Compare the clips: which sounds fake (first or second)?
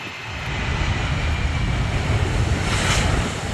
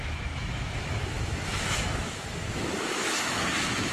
second